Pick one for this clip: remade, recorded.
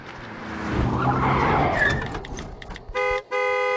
recorded